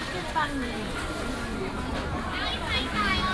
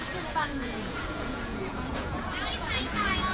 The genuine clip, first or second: first